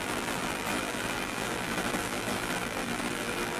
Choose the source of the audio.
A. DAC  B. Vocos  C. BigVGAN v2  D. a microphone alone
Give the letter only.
C